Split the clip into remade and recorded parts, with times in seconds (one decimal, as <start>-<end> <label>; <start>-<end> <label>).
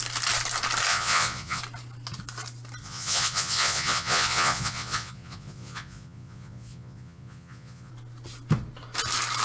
0.0-0.9 recorded; 0.9-1.6 remade; 1.6-2.8 recorded; 2.8-7.9 remade; 7.9-9.4 recorded